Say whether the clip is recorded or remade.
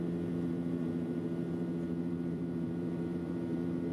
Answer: remade